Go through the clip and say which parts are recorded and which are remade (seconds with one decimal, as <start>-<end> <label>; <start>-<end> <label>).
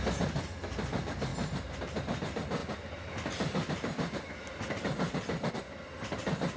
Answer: 0.0-6.6 recorded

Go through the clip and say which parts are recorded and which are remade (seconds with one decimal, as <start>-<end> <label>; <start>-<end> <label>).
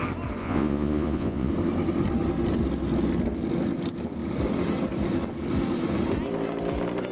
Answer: 0.0-0.4 recorded; 0.4-1.5 remade; 1.5-7.1 recorded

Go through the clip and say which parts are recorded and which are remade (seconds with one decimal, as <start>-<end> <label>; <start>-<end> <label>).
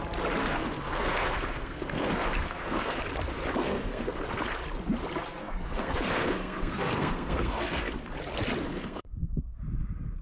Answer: 0.0-0.4 recorded; 0.4-3.0 remade; 3.0-3.6 recorded; 3.6-4.2 remade; 4.2-5.4 recorded; 5.4-7.8 remade; 7.8-8.6 recorded; 8.6-9.6 remade; 9.6-10.2 recorded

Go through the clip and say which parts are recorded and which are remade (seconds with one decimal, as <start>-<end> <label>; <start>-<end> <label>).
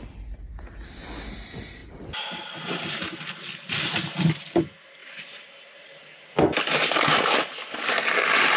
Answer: 0.0-8.6 recorded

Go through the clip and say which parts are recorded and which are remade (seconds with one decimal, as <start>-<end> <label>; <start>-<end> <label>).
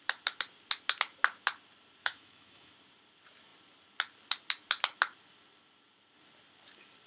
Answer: 0.0-2.0 recorded; 2.0-2.7 remade; 2.7-7.1 recorded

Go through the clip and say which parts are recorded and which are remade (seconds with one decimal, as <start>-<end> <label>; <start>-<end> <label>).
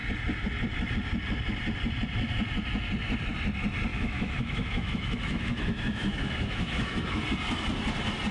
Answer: 0.0-3.9 recorded; 3.9-7.2 remade; 7.2-8.3 recorded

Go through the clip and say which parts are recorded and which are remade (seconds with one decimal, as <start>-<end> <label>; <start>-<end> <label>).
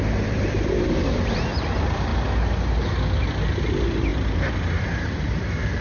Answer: 0.0-2.1 remade; 2.1-3.5 recorded; 3.5-5.8 remade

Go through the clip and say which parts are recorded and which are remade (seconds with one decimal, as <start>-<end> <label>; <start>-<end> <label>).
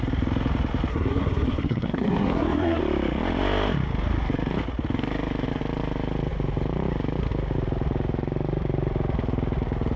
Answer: 0.0-0.9 recorded; 0.9-2.8 remade; 2.8-10.0 recorded